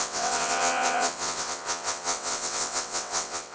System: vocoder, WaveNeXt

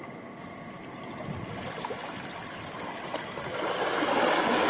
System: none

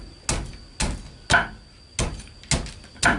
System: none